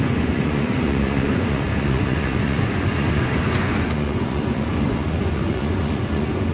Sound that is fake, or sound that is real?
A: fake